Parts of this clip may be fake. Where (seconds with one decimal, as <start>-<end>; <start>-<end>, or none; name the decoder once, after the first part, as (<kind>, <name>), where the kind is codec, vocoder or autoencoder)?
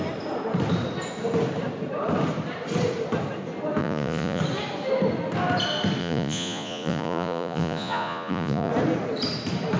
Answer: 3.8-4.4 (vocoder, Vocos); 6.0-8.7